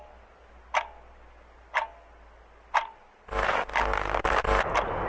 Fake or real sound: real